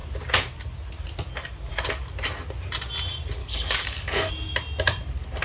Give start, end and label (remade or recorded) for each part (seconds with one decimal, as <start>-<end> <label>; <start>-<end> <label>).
0.0-3.4 recorded; 3.4-4.3 remade; 4.3-5.4 recorded